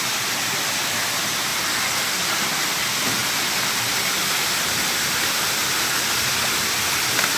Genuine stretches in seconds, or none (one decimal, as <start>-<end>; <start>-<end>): 0.0-1.5; 2.0-7.4

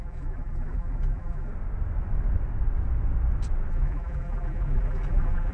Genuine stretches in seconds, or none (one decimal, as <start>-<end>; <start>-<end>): 1.5-3.7

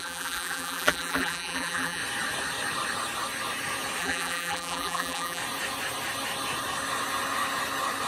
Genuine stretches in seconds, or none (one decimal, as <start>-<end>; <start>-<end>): 2.0-4.0; 5.4-8.1

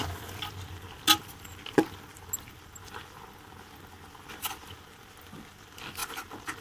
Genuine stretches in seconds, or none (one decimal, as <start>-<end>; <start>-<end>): 0.0-6.6